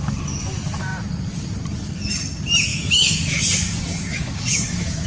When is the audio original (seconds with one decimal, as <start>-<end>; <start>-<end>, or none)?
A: 0.0-2.7; 3.4-4.1